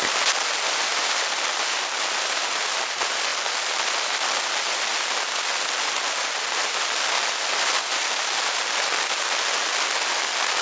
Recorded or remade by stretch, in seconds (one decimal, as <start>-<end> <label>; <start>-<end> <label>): 0.0-10.6 recorded